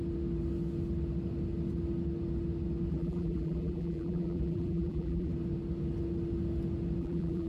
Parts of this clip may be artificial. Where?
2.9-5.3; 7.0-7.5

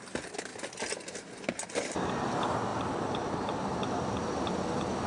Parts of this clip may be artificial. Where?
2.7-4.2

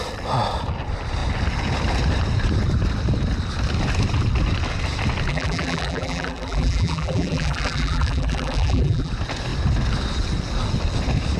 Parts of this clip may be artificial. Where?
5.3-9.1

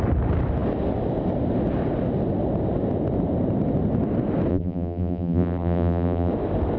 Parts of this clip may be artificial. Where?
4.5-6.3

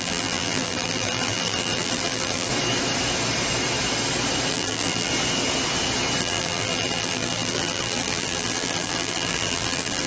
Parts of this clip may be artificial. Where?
0.0-2.5; 4.5-5.1; 6.2-10.1

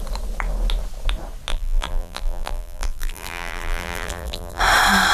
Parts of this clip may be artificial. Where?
1.5-4.6